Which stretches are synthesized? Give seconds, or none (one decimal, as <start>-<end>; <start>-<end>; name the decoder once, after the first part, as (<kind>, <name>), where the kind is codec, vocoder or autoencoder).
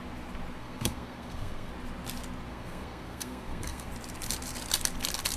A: 0.6-1.7 (codec, SNAC); 2.5-3.9